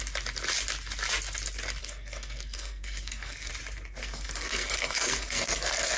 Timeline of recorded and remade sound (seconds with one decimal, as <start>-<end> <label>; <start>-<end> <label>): 0.0-1.8 recorded; 1.8-3.5 remade; 3.5-4.0 recorded; 4.0-6.0 remade